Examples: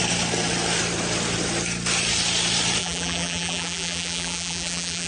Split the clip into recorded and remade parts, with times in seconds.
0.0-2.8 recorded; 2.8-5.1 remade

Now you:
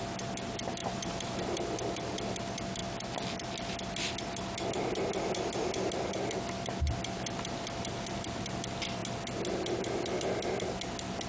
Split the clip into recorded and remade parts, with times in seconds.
0.0-0.8 recorded; 0.8-1.4 remade; 1.4-11.3 recorded

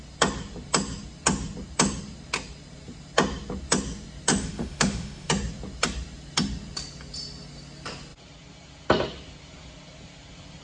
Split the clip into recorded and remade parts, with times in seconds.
0.0-4.3 recorded; 4.3-5.3 remade; 5.3-10.6 recorded

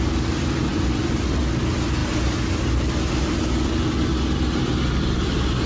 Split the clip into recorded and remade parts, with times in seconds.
0.0-0.7 recorded; 0.7-1.4 remade; 1.4-4.1 recorded; 4.1-5.7 remade

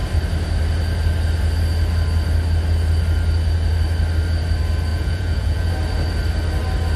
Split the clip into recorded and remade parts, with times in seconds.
0.0-4.9 recorded; 4.9-5.7 remade; 5.7-7.0 recorded